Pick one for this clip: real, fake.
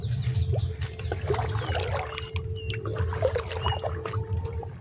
real